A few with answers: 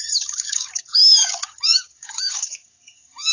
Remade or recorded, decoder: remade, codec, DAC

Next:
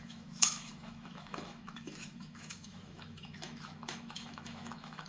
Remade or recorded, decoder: remade, autoencoder, DAC-VAE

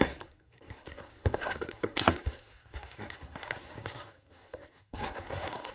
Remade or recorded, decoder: remade, codec, SNAC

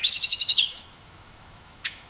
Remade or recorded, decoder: remade, autoencoder, DAC-VAE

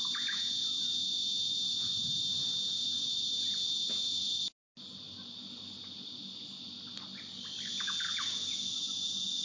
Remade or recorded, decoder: recorded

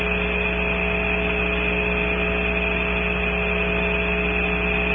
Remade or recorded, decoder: recorded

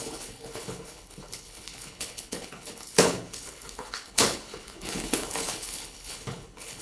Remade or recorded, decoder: remade, codec, HILCodec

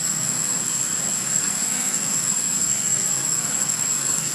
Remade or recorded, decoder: remade, codec, SNAC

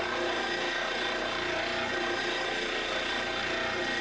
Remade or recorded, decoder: recorded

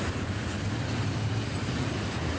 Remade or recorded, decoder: remade, vocoder, BigVGAN v2